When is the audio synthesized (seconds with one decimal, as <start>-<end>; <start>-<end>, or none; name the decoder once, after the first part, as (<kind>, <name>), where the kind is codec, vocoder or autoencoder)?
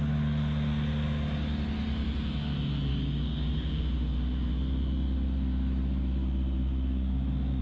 2.9-3.8 (codec, DAC)